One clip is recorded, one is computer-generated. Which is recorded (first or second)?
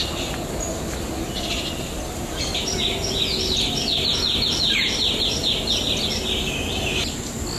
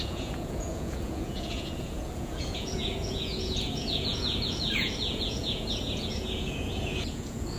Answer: first